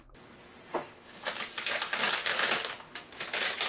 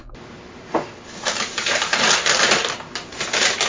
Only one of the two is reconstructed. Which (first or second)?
second